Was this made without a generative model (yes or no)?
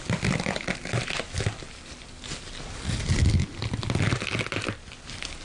yes